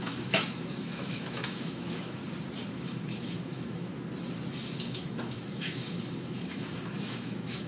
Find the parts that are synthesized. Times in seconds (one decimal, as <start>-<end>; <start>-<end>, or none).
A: 0.0-2.2; 2.7-3.9; 4.7-7.7